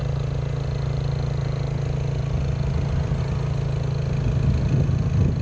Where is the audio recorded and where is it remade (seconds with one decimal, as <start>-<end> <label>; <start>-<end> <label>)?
0.0-5.4 recorded

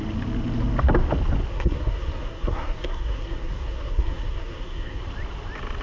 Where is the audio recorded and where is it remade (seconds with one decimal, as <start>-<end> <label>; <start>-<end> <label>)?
0.0-1.5 recorded; 1.5-5.0 remade; 5.0-5.8 recorded

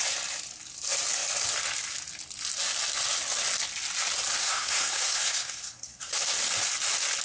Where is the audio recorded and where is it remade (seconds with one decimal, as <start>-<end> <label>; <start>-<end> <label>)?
0.0-4.4 recorded; 4.4-6.1 remade; 6.1-7.2 recorded

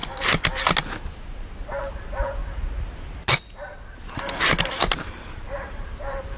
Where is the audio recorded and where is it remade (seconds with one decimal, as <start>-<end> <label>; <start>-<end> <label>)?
0.0-6.4 recorded

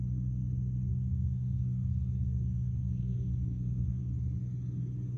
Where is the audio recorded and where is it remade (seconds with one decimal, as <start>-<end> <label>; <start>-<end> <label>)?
0.0-0.9 recorded; 0.9-4.0 remade; 4.0-5.2 recorded

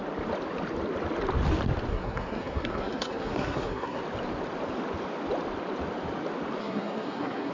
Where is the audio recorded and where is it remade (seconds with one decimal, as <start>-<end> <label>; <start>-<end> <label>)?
0.0-1.9 recorded; 1.9-4.0 remade; 4.0-6.6 recorded; 6.6-7.5 remade